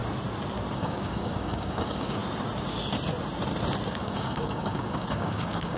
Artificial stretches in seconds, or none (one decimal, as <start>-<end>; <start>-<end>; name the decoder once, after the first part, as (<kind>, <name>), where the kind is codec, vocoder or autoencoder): 0.7-2.2 (codec, DAC); 4.0-5.8